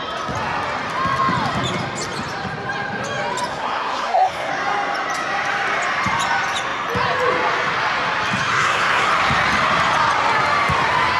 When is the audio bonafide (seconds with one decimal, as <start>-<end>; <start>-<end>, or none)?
0.0-3.5; 4.5-8.5; 9.1-11.2

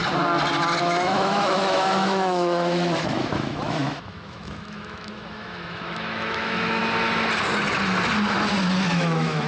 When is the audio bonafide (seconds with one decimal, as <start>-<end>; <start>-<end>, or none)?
0.0-0.8; 6.8-8.9

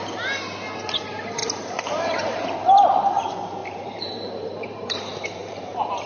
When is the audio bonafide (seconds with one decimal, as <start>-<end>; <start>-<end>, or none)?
0.0-1.4; 3.2-3.6; 5.0-5.4

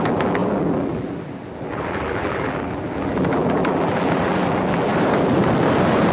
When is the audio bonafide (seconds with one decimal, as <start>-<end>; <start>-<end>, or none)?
4.9-6.1

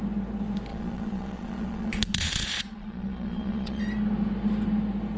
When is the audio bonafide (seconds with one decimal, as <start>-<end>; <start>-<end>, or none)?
0.0-0.7; 3.8-5.2

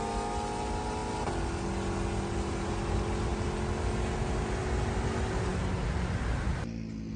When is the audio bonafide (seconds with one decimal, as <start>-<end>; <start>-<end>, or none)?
0.0-7.2

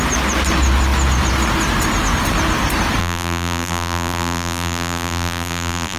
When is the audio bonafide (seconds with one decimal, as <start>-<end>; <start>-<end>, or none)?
0.0-3.0

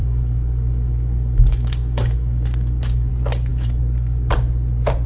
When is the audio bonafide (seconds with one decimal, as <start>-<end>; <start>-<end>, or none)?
3.1-3.5; 4.3-5.1